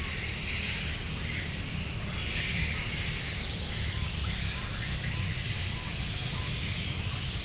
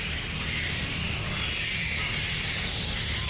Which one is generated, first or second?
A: first